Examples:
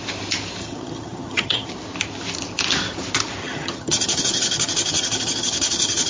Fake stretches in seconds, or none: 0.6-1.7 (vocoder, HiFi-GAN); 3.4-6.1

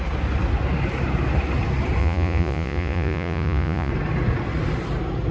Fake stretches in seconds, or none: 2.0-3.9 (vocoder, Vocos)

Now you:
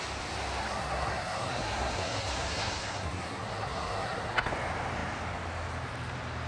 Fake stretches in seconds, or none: 0.6-4.5 (codec, SNAC)